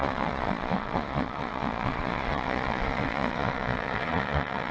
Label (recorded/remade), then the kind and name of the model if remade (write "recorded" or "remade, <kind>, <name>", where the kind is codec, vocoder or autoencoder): remade, vocoder, Vocos